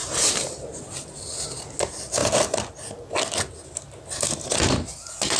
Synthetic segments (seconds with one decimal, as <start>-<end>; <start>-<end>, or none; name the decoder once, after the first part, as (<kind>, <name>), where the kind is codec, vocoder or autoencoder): 0.0-1.2 (vocoder, BigVGAN v2)